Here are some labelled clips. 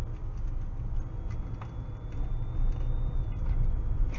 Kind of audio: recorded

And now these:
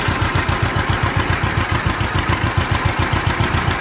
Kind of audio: remade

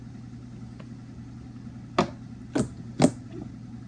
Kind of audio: recorded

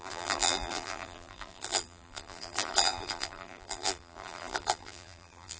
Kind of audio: remade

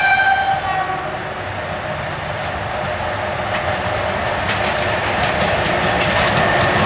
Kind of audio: recorded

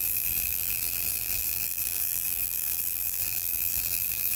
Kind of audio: remade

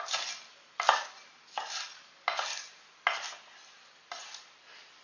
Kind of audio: recorded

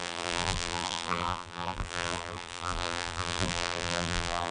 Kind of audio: remade